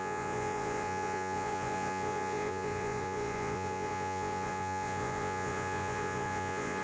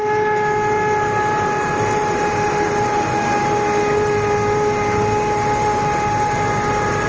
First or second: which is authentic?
second